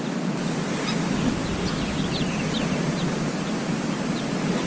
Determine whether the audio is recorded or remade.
recorded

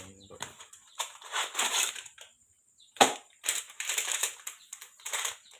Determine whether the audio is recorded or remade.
remade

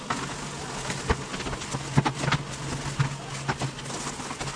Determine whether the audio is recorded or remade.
recorded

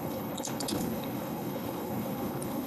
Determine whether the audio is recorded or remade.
remade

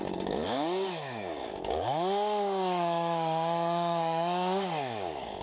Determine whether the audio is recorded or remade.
remade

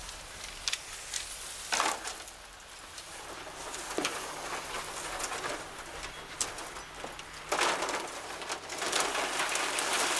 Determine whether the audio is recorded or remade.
recorded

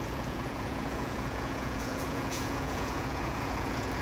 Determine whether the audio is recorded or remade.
remade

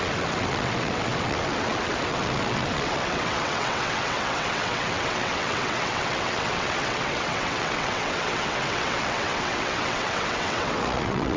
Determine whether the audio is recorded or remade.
remade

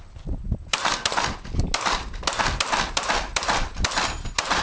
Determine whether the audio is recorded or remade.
recorded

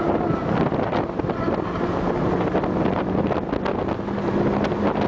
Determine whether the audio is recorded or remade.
recorded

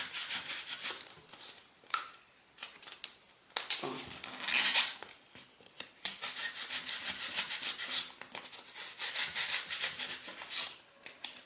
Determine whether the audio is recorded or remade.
recorded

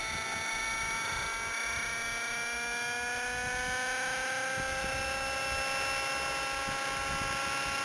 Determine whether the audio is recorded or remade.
recorded